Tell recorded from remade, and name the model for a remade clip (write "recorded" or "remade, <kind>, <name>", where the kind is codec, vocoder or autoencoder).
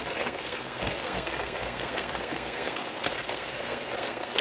remade, codec, SNAC